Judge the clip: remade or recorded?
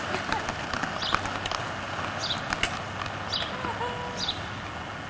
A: recorded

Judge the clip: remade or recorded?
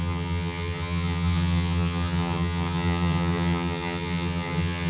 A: remade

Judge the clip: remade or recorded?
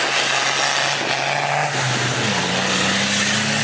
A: recorded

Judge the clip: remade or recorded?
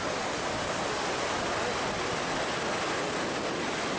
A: recorded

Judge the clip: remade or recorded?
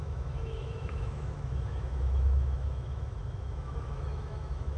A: remade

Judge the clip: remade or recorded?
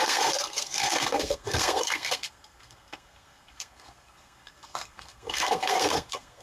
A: remade